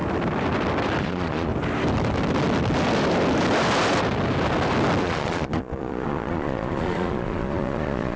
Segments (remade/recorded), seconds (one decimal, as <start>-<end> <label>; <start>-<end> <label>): 0.0-1.0 recorded; 1.0-1.5 remade; 1.5-5.0 recorded; 5.0-8.2 remade